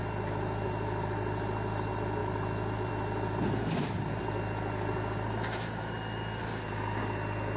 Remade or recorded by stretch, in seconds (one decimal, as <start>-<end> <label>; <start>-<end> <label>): 0.0-7.6 recorded